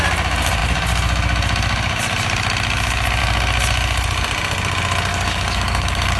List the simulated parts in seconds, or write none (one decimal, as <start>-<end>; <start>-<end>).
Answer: 5.1-6.2